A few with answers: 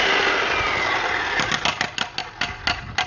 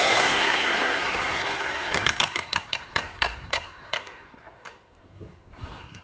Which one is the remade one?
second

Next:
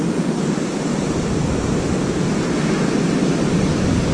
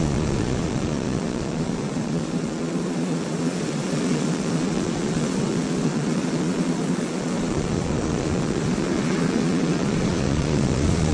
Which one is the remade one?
second